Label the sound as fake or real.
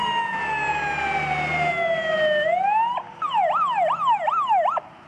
real